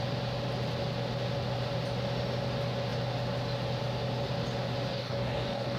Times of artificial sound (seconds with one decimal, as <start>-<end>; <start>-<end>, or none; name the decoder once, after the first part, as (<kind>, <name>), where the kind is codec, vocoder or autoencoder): 4.9-5.8 (codec, DAC)